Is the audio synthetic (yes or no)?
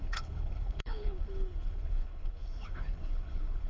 yes